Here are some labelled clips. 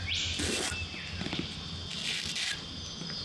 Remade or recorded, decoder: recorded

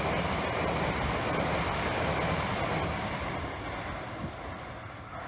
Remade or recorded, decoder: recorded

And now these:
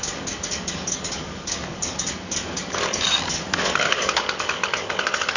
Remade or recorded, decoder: remade, codec, DAC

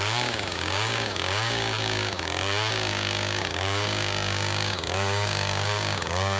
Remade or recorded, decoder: remade, codec, DAC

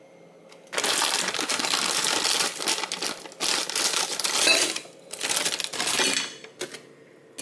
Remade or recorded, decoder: recorded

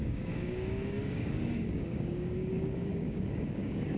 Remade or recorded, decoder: remade, codec, DAC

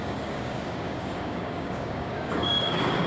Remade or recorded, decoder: remade, codec, DAC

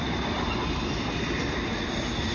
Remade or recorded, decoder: recorded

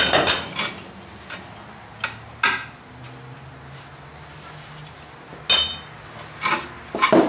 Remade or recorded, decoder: recorded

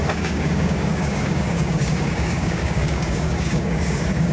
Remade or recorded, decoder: remade, codec, DAC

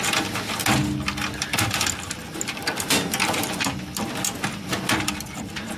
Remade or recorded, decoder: recorded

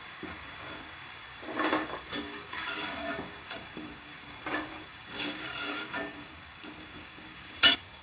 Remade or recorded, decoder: remade, codec, DAC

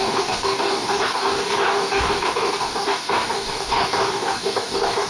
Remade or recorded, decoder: remade, codec, DAC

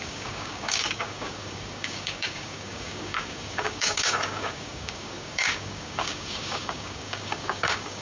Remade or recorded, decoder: remade, codec, DAC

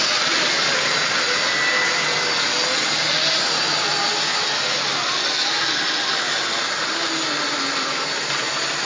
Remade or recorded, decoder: recorded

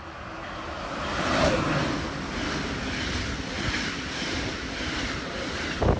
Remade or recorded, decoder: recorded